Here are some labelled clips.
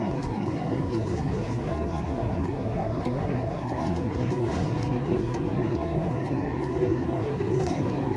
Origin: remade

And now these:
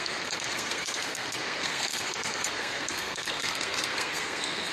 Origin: remade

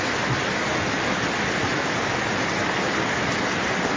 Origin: recorded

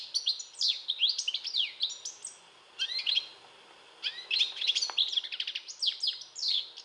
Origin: recorded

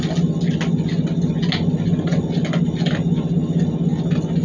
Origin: recorded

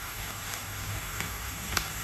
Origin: remade